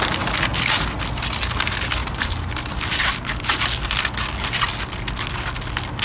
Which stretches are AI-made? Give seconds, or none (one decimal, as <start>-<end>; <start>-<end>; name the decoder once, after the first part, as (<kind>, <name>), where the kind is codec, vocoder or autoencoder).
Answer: 2.0-3.6 (vocoder, BigVGAN v2)